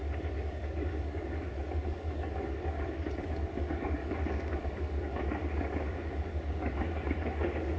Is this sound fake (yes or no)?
yes